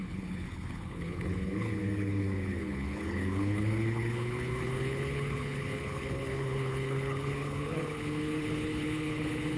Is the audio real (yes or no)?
no